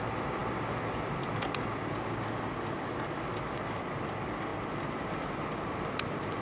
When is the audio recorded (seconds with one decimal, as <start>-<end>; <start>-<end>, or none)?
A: 0.0-6.4